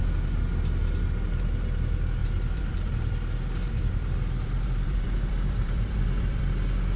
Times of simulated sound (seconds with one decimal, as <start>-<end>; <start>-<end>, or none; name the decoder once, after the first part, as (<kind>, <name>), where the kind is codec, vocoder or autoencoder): 2.2-6.4 (vocoder, BigVGAN v2)